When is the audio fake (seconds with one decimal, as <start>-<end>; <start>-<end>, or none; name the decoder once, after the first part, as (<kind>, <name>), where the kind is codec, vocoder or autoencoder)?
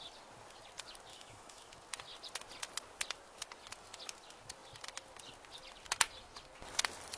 1.1-1.7 (autoencoder, DAC-VAE)